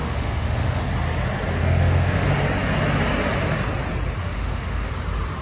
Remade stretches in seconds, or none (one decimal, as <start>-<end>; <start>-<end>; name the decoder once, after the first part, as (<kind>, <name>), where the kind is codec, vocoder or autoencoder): 0.0-0.8 (autoencoder, DAC-VAE); 1.5-2.3; 4.2-4.9